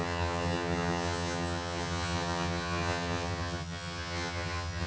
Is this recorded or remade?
remade